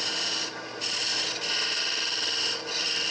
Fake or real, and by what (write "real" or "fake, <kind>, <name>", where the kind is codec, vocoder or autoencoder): real